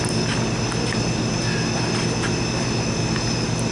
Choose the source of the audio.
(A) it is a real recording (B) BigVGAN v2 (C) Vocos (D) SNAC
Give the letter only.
A